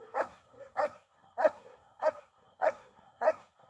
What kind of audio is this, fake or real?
fake